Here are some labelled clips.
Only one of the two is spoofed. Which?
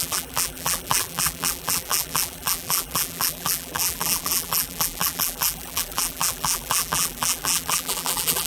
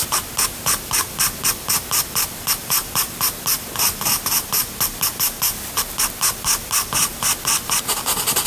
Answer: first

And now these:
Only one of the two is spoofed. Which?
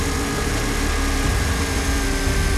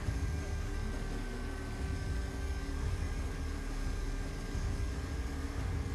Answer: second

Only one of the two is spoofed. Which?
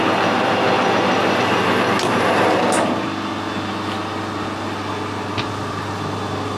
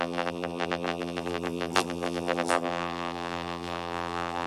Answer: second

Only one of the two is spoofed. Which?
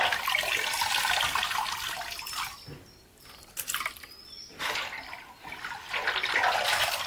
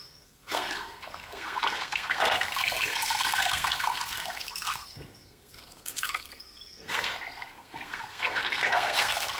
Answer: second